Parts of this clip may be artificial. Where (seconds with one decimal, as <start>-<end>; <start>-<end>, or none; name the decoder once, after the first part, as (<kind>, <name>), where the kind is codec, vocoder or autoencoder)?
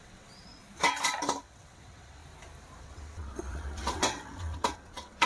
0.0-0.6 (vocoder, WaveNeXt); 1.4-2.2; 2.8-5.3